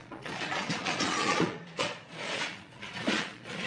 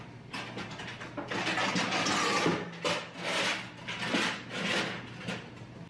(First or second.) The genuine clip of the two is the second